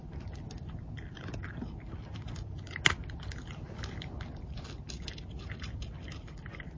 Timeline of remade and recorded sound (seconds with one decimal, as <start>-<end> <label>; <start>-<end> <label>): 0.0-6.8 recorded